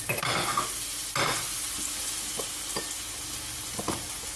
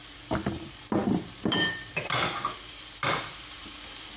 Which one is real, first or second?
first